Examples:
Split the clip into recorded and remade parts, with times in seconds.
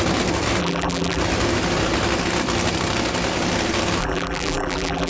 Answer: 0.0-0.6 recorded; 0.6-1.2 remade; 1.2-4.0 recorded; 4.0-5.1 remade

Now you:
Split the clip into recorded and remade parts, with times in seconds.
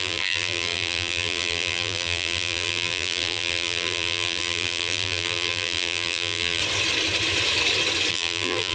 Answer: 0.0-6.6 remade; 6.6-8.1 recorded; 8.1-8.7 remade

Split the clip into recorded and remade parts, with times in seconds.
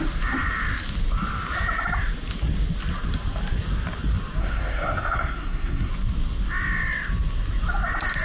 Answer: 0.0-4.4 recorded; 4.4-5.9 remade; 5.9-8.2 recorded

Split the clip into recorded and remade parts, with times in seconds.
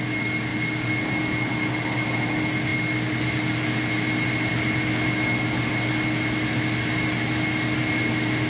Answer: 0.0-8.5 recorded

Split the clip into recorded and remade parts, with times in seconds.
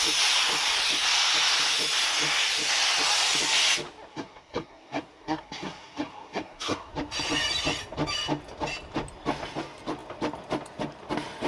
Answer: 0.0-4.1 recorded; 4.1-6.9 remade; 6.9-11.5 recorded